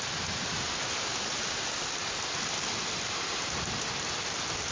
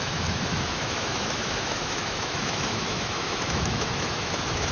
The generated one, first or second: second